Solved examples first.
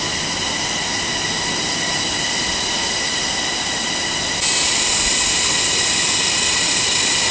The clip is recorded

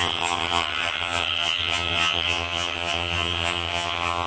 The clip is remade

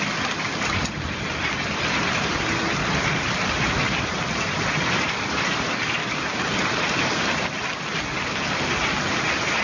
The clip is recorded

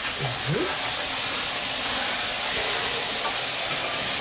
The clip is recorded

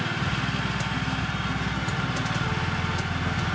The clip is recorded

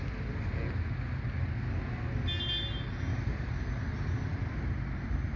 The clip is recorded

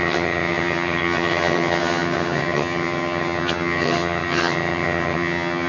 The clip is remade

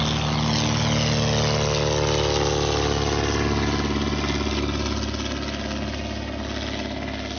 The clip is recorded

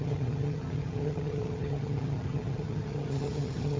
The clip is remade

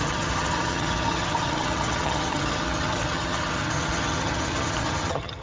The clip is remade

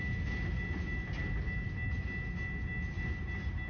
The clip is recorded